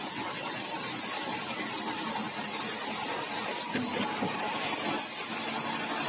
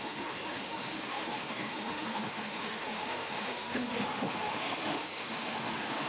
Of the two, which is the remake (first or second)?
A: second